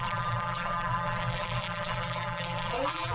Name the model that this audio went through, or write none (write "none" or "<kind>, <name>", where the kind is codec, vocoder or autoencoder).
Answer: vocoder, BigVGAN v2